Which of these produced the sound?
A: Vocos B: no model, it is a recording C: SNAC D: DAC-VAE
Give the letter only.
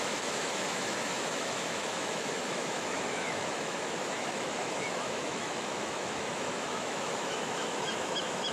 D